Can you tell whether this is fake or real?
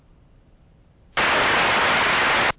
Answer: real